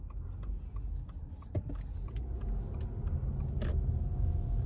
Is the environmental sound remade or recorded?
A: recorded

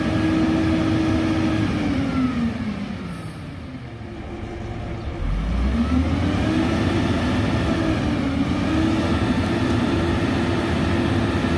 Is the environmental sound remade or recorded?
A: recorded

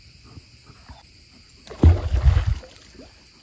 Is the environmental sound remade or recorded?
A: recorded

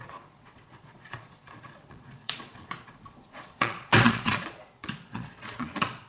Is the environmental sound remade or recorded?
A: remade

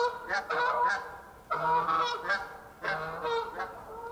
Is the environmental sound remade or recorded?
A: recorded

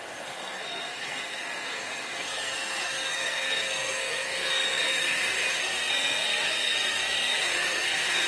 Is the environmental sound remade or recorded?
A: remade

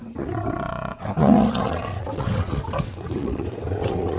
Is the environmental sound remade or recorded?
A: remade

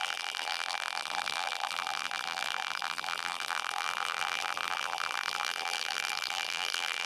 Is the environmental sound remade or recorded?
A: remade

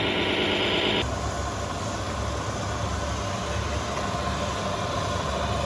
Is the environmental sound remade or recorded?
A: recorded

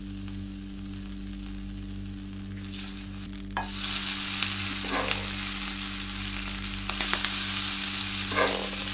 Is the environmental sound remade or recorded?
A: recorded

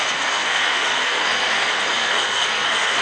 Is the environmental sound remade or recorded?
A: remade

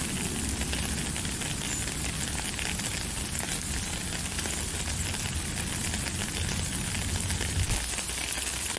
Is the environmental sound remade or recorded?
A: recorded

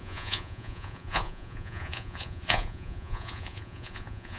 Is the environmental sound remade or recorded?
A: remade